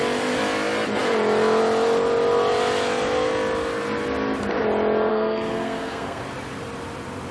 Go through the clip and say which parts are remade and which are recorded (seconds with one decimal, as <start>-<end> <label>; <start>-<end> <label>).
0.0-5.1 recorded; 5.1-6.2 remade; 6.2-7.3 recorded